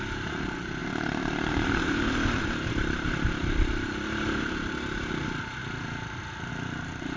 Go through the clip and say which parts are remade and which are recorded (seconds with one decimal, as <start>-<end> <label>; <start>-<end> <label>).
0.0-5.6 remade; 5.6-6.5 recorded; 6.5-7.2 remade